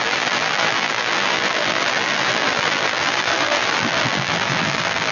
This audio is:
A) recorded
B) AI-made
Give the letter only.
B